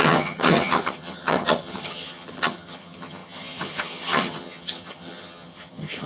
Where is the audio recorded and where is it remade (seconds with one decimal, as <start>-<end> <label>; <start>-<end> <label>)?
0.0-6.1 remade